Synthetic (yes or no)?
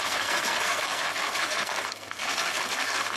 yes